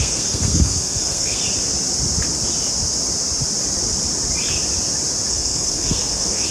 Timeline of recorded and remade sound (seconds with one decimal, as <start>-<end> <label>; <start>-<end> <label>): 0.0-1.4 remade; 1.4-5.3 recorded; 5.3-6.5 remade